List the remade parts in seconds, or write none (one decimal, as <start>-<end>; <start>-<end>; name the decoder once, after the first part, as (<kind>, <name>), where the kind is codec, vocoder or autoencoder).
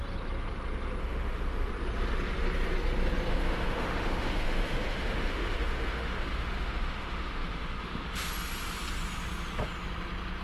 1.0-1.7 (autoencoder, DAC-VAE); 3.3-8.3